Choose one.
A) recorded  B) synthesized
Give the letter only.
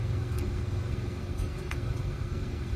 B